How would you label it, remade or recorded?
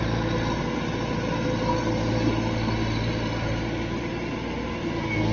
recorded